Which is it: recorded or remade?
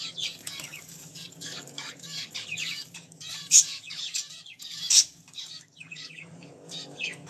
remade